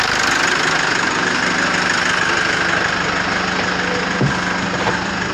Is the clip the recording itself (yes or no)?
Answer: yes